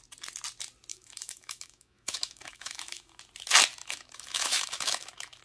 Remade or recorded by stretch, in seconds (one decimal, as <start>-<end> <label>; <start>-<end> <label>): 0.0-0.9 recorded; 0.9-3.2 remade; 3.2-3.8 recorded; 3.8-5.4 remade